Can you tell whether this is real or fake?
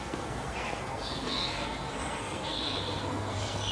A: fake